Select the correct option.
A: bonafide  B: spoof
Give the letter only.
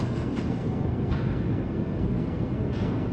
B